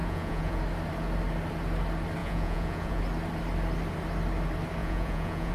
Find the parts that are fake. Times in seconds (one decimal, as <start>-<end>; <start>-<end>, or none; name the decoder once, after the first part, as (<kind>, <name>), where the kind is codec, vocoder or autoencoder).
0.0-0.6 (vocoder, Vocos); 2.2-3.0; 4.8-5.5